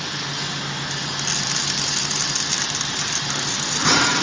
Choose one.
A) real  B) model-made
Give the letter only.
A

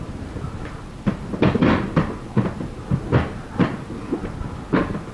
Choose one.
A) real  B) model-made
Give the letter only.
A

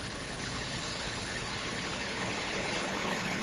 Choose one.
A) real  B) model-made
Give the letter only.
B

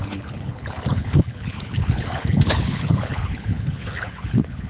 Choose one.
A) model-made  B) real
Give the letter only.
A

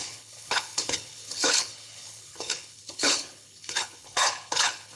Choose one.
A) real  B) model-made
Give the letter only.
B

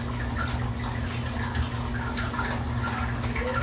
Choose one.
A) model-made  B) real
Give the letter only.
B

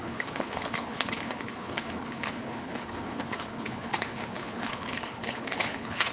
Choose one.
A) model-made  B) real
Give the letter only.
A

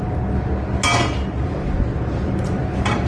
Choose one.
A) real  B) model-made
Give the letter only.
A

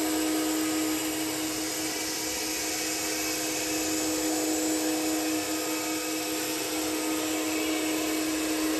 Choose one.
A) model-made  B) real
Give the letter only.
B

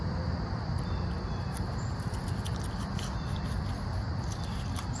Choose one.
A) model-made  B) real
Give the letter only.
B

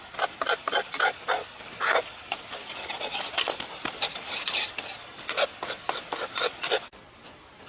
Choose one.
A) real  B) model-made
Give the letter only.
A